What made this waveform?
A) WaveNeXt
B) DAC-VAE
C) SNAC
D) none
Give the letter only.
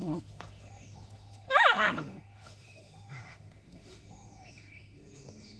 B